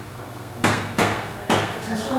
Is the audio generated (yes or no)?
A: yes